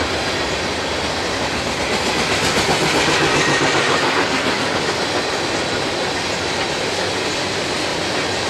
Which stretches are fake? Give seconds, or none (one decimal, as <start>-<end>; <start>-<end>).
3.8-4.9

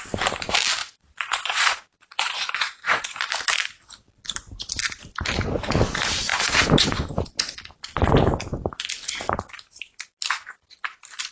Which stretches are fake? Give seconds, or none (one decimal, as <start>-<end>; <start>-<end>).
0.8-3.2

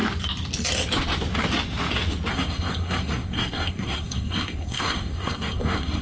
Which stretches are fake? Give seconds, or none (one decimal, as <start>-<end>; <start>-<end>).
2.3-6.0